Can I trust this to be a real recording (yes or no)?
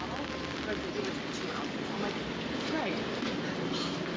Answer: yes